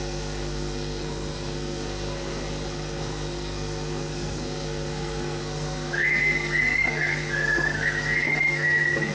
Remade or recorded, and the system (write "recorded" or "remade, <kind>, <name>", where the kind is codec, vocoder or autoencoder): remade, codec, SNAC